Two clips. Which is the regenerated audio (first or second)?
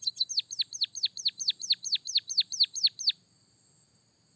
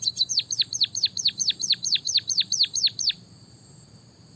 second